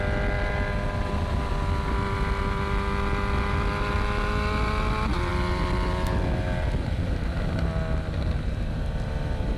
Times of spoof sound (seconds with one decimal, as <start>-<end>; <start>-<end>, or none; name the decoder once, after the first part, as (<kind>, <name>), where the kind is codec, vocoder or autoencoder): none